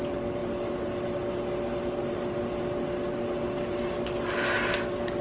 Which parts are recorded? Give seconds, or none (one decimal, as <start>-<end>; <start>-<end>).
0.0-5.2